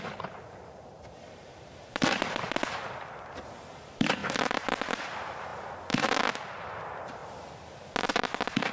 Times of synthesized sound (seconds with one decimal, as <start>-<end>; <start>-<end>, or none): 0.0-7.2; 8.0-8.7